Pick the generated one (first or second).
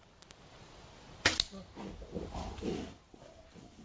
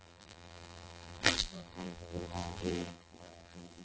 second